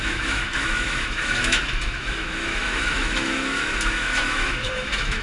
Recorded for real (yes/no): no